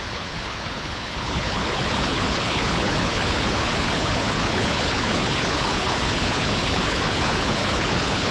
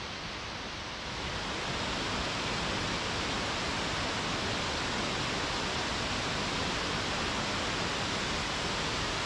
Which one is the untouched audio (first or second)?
second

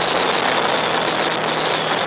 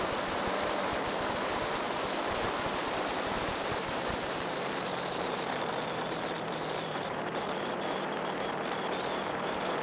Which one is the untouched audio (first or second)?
first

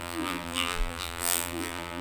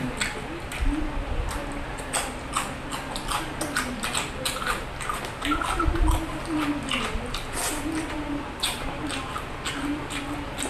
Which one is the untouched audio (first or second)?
second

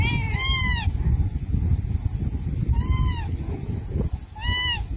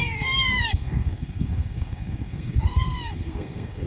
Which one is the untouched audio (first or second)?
first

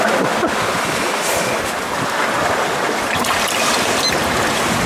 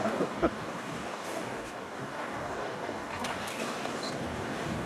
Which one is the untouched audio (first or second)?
first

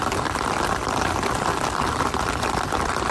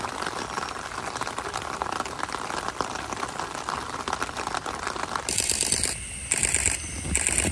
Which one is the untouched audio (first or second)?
second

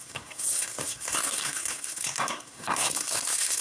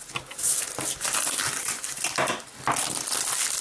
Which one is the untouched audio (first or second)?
second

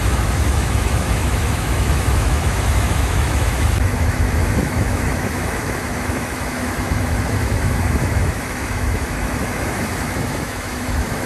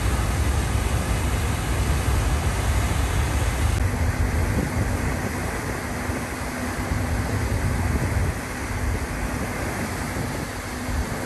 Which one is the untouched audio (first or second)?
second